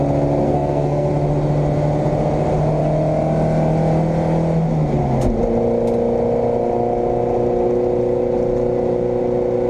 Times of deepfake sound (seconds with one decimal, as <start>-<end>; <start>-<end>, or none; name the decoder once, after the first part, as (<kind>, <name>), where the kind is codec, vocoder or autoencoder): 0.4-1.1 (codec, SNAC)